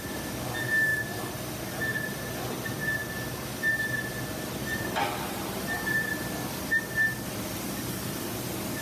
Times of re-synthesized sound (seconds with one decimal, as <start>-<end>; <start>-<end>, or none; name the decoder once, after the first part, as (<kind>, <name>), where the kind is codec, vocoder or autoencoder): none